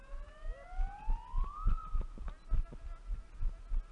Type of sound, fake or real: real